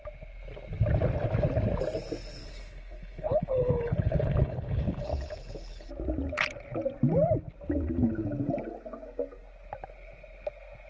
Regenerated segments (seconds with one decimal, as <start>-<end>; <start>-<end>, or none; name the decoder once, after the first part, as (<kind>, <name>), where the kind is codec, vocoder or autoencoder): 2.4-5.9 (codec, HILCodec)